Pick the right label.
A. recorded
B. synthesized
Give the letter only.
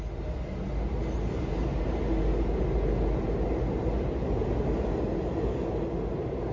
A